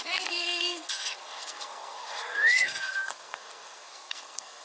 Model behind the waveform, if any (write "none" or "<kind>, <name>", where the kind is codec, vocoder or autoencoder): codec, SNAC